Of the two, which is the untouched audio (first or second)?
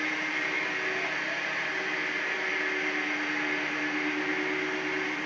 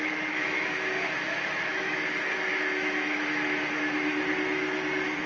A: first